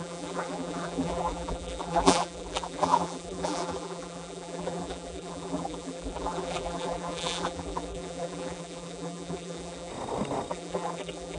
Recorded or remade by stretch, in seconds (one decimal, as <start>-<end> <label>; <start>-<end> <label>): 0.0-9.9 remade; 9.9-10.5 recorded; 10.5-11.4 remade